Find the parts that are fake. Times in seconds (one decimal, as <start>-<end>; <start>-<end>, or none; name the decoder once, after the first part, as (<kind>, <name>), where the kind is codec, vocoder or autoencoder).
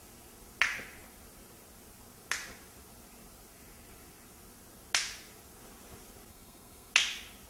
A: 6.3-6.9 (codec, SNAC)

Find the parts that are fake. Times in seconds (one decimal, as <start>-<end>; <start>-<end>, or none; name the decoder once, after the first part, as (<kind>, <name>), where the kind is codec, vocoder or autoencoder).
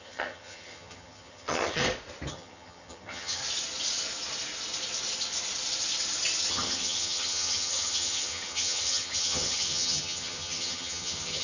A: 0.0-1.8 (vocoder, HiFi-GAN); 2.3-3.4; 6.5-11.4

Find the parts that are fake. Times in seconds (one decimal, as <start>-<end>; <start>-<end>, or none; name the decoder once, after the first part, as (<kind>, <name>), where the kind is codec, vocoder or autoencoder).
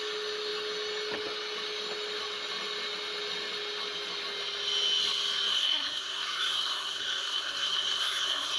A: 5.5-8.6 (codec, SNAC)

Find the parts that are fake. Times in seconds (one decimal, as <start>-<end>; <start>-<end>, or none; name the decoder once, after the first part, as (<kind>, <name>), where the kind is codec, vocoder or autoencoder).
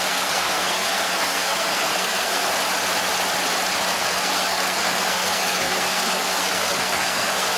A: 0.0-2.5 (codec, SNAC); 3.9-7.6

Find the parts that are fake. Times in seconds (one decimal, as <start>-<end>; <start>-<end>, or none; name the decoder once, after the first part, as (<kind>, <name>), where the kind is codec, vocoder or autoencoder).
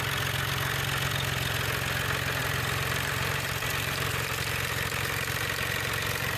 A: 2.4-6.4 (vocoder, BigVGAN v2)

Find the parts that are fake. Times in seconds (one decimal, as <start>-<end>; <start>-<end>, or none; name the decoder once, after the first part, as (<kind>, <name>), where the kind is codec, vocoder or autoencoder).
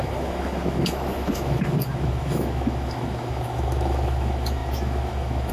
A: 0.0-5.5 (autoencoder, DAC-VAE)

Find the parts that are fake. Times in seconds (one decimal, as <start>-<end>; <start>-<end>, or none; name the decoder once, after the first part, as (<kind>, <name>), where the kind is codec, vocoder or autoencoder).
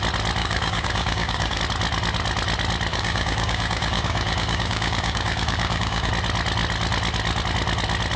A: 0.4-1.6 (codec, DAC); 2.9-6.1